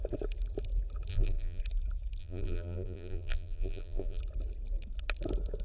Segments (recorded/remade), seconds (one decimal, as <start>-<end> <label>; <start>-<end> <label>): 0.0-1.1 recorded; 1.1-1.6 remade; 1.6-2.2 recorded; 2.2-4.2 remade; 4.2-5.6 recorded